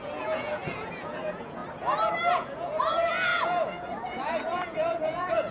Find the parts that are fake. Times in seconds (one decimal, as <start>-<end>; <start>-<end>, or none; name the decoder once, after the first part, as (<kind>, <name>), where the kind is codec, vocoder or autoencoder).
0.0-1.6 (vocoder, Vocos); 2.3-5.5

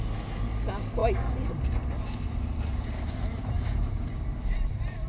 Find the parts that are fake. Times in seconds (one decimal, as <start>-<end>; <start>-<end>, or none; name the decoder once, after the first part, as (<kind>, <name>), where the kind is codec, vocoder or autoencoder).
2.7-5.1 (vocoder, BigVGAN v2)